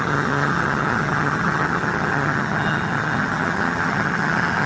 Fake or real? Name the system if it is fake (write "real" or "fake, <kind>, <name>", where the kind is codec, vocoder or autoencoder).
fake, vocoder, HiFi-GAN